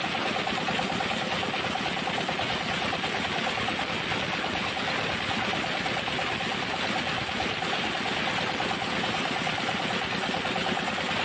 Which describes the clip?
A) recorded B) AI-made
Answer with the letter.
A